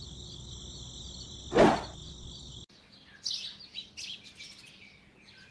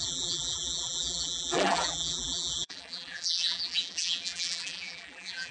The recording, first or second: first